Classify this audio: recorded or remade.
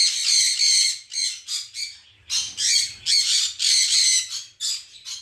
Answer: recorded